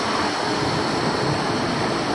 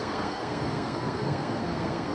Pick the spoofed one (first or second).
second